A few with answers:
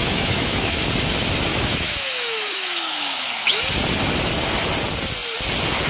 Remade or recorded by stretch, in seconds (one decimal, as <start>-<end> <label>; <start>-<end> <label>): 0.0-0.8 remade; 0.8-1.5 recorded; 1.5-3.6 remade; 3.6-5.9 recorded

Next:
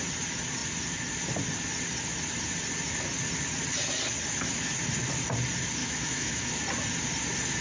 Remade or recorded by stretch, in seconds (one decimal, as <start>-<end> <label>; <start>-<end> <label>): 0.0-5.8 recorded; 5.8-6.5 remade; 6.5-7.6 recorded

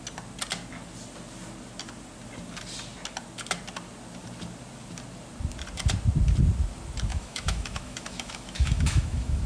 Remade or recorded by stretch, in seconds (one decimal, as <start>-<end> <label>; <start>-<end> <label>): 0.0-7.1 recorded; 7.1-9.5 remade

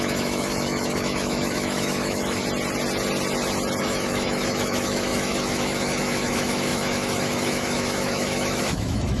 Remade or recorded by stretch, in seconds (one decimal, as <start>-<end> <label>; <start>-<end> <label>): 0.0-2.4 remade; 2.4-3.8 recorded; 3.8-9.2 remade

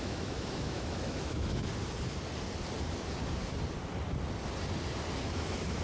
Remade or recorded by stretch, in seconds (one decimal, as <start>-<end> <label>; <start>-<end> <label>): 0.0-1.7 remade; 1.7-5.2 recorded; 5.2-5.8 remade